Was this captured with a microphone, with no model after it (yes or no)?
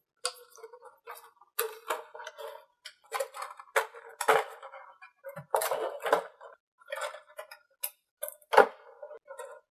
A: yes